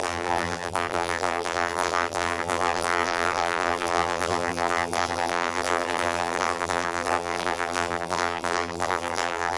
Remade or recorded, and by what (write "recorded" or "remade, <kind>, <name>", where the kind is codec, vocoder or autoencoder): remade, vocoder, BigVGAN v2